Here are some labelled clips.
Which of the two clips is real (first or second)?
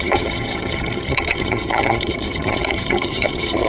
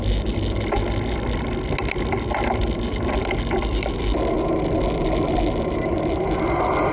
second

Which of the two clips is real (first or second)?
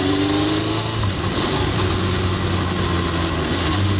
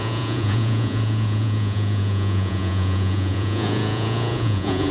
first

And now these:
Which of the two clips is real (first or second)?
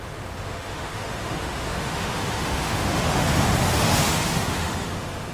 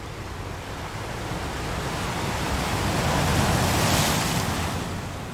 second